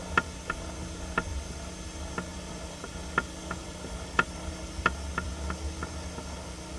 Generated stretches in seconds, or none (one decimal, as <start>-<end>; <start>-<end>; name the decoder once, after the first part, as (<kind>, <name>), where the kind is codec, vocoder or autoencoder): 2.3-3.0 (vocoder, BigVGAN v2); 3.6-5.3